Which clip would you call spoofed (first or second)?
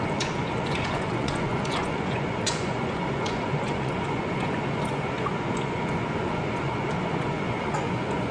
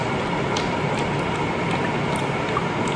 first